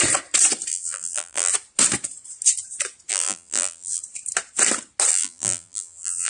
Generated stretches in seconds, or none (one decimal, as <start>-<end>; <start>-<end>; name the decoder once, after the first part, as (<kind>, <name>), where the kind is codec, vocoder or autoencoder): 0.7-1.5 (vocoder, BigVGAN v2); 3.1-4.0; 5.1-6.3